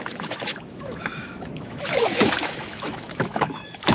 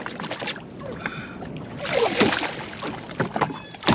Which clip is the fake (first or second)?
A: first